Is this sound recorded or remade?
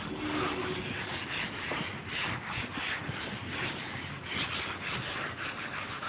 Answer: recorded